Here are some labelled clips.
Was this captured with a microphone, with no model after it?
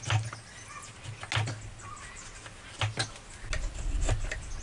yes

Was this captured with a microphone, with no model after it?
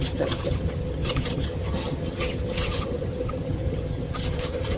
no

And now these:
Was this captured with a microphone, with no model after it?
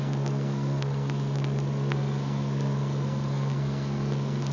no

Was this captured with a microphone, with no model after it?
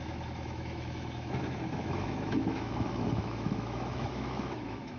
no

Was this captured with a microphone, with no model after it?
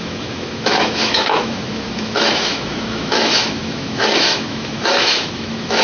no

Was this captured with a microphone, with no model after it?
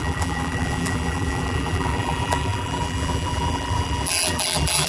no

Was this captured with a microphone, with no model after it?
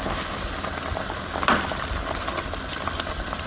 yes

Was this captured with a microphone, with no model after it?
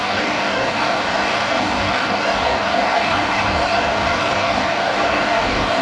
no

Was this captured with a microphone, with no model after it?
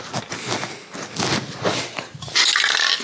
yes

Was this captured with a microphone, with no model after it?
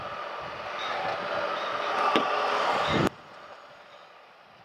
yes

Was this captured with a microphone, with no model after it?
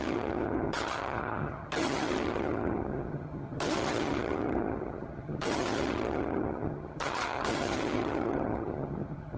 no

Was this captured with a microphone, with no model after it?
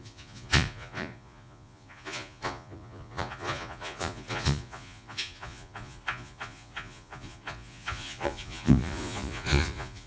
no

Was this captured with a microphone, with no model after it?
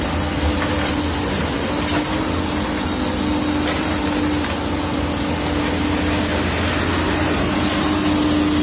yes